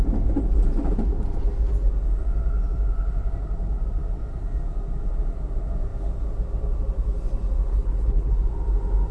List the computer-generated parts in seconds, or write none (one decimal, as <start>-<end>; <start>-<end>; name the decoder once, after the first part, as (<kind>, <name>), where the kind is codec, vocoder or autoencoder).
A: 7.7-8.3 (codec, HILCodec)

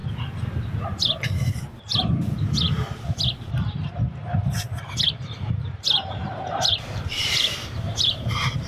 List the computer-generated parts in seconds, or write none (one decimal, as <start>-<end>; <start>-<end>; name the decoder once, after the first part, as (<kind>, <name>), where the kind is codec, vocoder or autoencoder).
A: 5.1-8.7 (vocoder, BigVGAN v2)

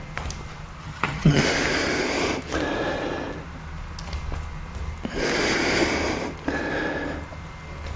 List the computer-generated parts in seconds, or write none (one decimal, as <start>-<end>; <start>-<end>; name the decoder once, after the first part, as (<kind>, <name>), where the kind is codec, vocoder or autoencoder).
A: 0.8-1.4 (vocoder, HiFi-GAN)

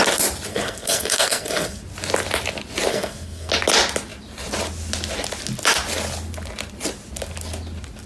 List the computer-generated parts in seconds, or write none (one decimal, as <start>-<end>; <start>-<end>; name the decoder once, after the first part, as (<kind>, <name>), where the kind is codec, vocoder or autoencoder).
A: 0.5-1.8 (codec, SNAC); 2.9-3.5

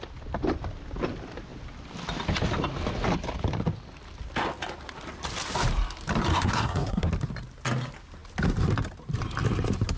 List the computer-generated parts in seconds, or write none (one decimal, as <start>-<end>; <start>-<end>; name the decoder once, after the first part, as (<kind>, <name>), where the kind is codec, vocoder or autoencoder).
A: 6.3-7.1 (codec, SNAC)

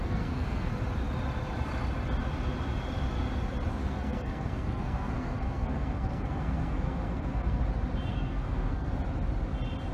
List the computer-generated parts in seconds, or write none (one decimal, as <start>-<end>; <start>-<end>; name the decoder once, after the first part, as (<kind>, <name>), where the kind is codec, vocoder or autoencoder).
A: 0.0-0.7 (codec, SNAC); 3.8-7.6; 8.1-8.9